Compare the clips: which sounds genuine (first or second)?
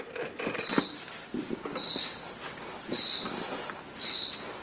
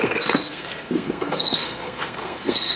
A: first